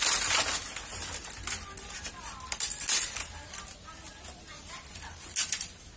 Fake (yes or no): no